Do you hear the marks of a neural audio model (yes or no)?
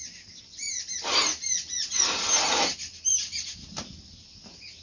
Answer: no